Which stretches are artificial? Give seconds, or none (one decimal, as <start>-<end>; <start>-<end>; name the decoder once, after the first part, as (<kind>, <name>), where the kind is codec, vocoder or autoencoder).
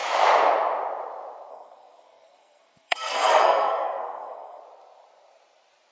1.5-4.6 (codec, SNAC)